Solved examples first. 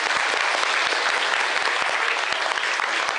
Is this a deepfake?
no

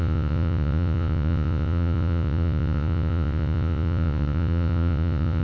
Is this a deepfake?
yes